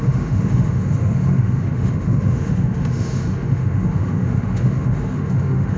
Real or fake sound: fake